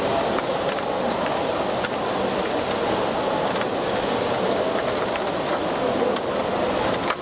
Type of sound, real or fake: real